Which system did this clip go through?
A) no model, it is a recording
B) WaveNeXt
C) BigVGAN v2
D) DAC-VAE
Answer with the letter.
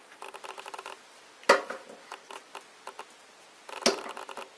A